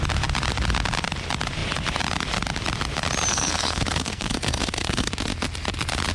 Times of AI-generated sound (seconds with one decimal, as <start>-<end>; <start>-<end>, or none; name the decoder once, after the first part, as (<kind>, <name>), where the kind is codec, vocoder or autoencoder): 3.3-5.1 (codec, SNAC)